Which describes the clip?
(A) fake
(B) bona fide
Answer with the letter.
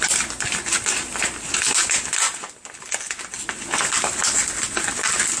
B